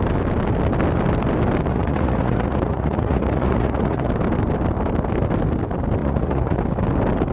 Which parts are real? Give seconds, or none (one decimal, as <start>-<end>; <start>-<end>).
0.0-1.7; 4.1-6.0; 6.6-7.3